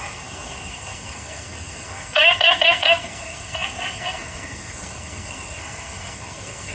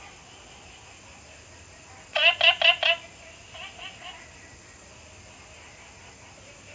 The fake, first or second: first